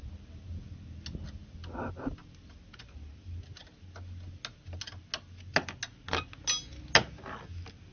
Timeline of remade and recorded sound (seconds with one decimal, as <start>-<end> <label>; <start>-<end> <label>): 0.0-7.9 recorded